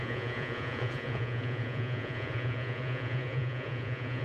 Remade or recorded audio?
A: remade